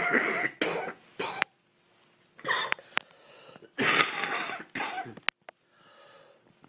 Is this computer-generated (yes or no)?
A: no